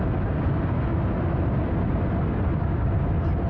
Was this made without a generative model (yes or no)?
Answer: yes